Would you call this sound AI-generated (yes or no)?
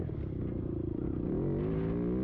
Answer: no